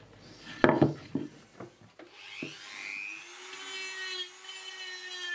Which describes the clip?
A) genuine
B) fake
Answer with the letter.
A